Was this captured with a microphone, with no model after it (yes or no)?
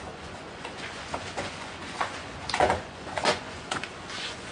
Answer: no